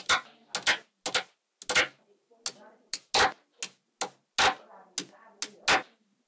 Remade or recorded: recorded